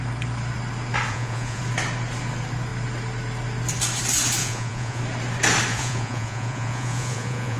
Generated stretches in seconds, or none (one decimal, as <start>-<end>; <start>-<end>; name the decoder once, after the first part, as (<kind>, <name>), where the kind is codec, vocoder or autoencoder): 1.1-1.6 (vocoder, Vocos); 4.4-5.0; 5.7-7.6